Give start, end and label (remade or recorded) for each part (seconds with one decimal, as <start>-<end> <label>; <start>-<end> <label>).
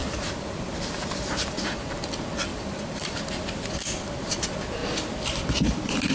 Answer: 0.0-2.1 remade; 2.1-2.5 recorded; 2.5-3.2 remade; 3.2-6.1 recorded